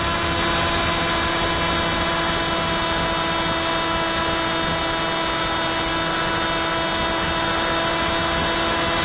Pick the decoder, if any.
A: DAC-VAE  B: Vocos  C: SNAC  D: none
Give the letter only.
D